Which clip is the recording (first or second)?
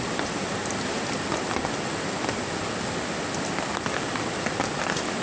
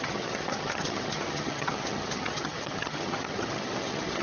first